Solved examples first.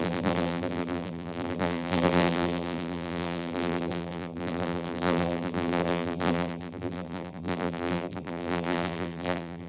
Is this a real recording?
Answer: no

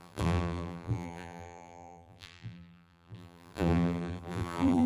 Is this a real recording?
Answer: no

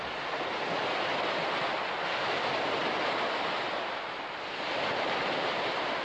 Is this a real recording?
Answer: yes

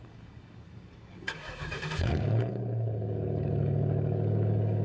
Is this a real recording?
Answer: no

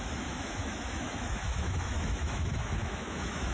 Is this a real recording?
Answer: no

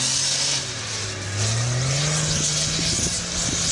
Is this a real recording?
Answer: yes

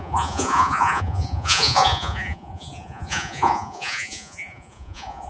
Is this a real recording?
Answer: no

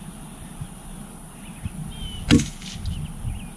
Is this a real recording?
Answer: yes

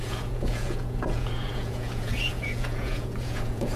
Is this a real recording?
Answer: no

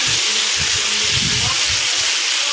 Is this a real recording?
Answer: yes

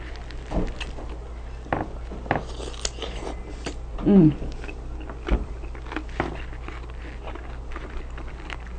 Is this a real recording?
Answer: yes